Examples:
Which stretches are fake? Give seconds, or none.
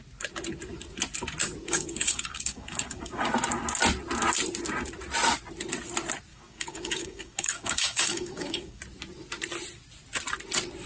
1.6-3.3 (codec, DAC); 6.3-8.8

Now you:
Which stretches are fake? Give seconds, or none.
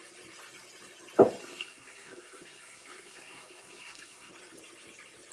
1.4-4.3 (codec, SNAC)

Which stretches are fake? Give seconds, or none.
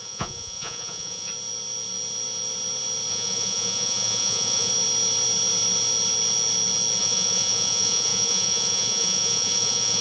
0.0-1.3 (vocoder, Vocos); 3.1-4.7; 7.0-10.0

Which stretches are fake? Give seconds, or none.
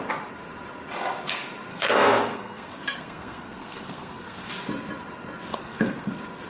1.7-4.5 (codec, SNAC); 5.5-6.1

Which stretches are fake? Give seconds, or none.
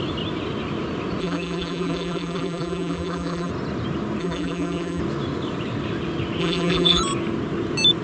1.2-3.5 (vocoder, BigVGAN v2); 4.2-5.0; 6.4-7.0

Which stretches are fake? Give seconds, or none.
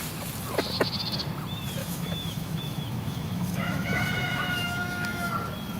1.8-5.3 (autoencoder, DAC-VAE)